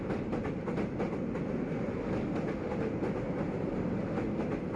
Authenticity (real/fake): real